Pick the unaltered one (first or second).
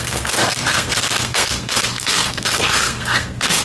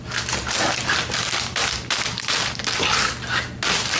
second